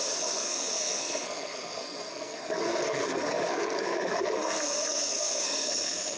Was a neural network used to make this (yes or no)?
yes